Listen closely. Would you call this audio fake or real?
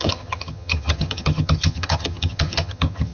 fake